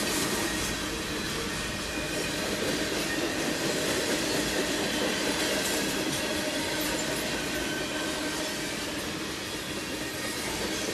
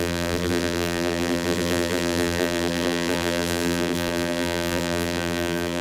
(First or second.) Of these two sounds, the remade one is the second